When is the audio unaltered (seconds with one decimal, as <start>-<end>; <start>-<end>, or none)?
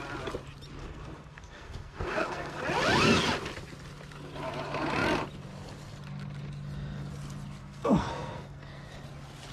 0.0-0.8; 2.6-7.6; 8.9-9.5